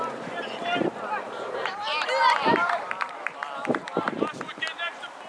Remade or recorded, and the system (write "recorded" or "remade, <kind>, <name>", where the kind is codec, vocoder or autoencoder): remade, vocoder, BigVGAN v2